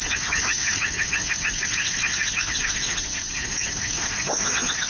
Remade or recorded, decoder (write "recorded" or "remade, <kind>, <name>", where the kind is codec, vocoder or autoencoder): remade, autoencoder, DAC-VAE